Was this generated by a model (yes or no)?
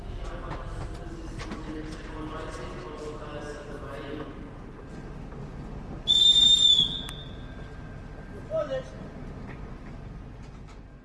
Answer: no